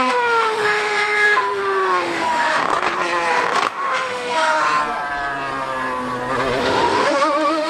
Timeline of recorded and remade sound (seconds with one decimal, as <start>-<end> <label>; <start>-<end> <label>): 0.0-2.7 remade; 2.7-3.3 recorded; 3.3-4.8 remade; 4.8-6.6 recorded; 6.6-7.7 remade